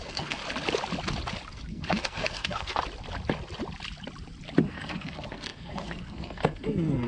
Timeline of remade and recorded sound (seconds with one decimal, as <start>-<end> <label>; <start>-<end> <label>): 0.0-0.4 remade; 0.4-1.5 recorded; 1.5-2.8 remade; 2.8-4.7 recorded; 4.7-7.1 remade